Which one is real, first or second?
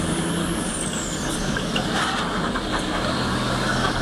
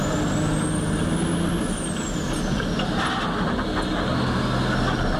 second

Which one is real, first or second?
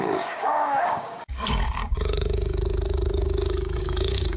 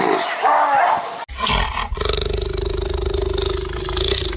second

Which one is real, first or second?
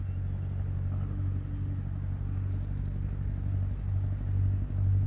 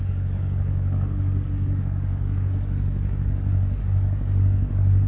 first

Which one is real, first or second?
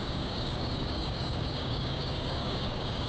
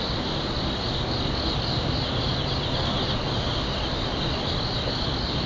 second